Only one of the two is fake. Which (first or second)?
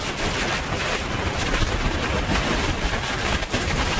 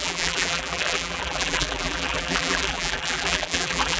second